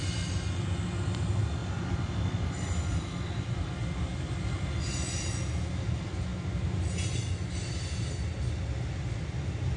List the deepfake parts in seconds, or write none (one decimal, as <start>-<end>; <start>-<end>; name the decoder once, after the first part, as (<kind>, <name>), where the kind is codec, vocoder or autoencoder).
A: 1.6-3.7 (vocoder, BigVGAN v2)